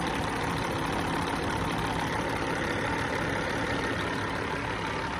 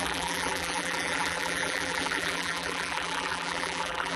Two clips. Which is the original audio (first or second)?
first